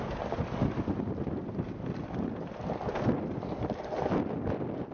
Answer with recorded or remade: recorded